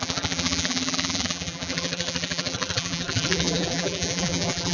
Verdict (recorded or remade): remade